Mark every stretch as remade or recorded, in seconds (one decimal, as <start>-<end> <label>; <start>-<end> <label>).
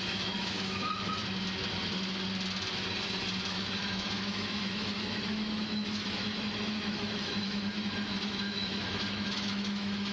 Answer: 0.0-1.2 remade; 1.2-3.5 recorded; 3.5-10.1 remade